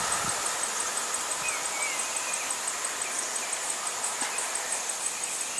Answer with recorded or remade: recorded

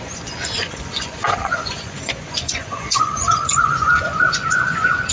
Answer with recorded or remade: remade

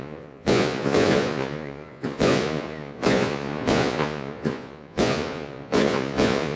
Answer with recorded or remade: remade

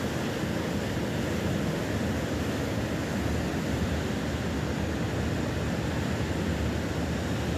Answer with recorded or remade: recorded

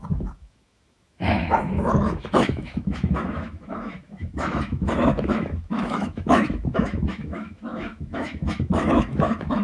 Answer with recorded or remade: remade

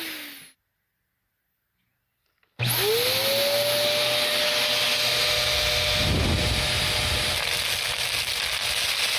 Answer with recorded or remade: recorded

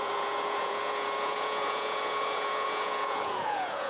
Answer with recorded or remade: remade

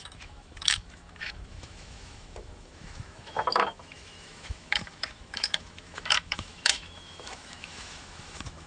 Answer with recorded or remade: remade